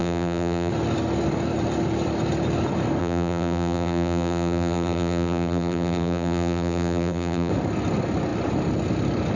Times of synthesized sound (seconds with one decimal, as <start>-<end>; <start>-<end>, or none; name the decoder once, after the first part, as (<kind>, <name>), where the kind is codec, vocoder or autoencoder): 0.0-0.7 (vocoder, BigVGAN v2); 3.0-7.5